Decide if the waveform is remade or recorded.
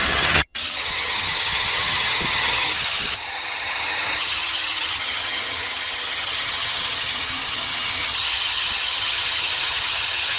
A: remade